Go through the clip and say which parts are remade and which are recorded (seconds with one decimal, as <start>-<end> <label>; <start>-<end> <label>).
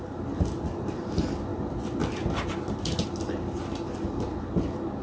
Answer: 0.0-5.0 recorded